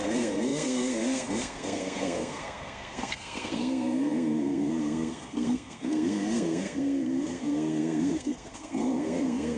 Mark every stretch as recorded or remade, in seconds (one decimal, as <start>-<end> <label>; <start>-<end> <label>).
0.0-9.6 remade